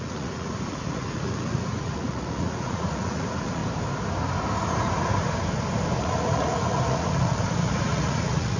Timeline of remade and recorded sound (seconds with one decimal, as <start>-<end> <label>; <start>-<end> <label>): 0.0-3.6 remade; 3.6-6.0 recorded; 6.0-8.6 remade